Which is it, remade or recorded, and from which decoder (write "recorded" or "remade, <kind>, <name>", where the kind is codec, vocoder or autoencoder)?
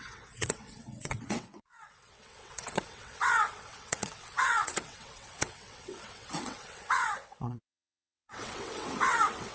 remade, vocoder, WaveNeXt